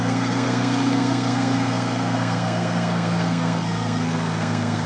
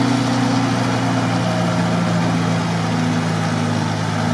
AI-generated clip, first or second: first